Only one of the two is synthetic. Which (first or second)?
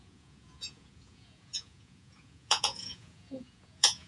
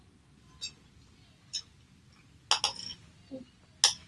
first